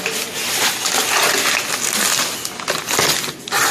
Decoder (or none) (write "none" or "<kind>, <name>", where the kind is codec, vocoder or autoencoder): none